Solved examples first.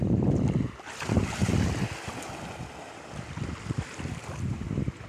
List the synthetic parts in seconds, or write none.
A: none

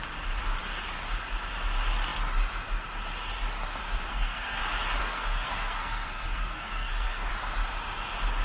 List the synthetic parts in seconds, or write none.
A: 4.1-4.6 (codec, SNAC); 5.0-7.3

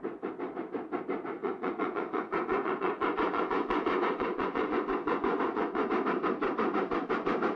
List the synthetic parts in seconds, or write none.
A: 1.4-5.9 (vocoder, Vocos)

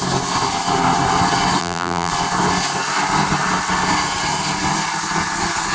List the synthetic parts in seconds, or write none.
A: 1.6-2.1 (vocoder, BigVGAN v2)

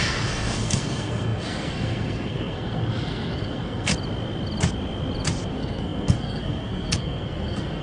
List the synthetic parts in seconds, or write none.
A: 0.0-3.9 (codec, SNAC); 5.5-7.8